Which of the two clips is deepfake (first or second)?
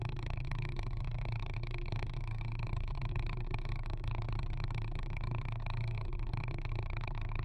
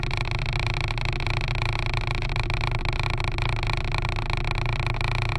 first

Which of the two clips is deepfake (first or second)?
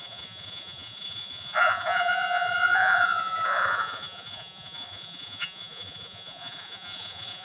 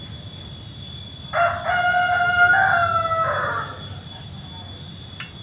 first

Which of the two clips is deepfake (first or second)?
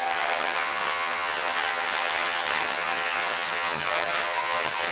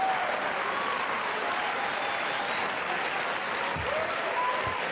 first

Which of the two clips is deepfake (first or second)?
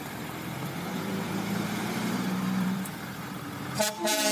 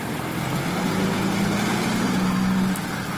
first